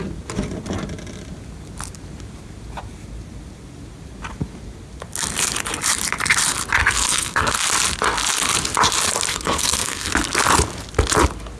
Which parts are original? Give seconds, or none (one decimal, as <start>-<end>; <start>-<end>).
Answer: 0.0-6.8; 7.5-9.3; 10.1-11.6